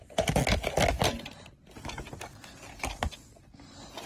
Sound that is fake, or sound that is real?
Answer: real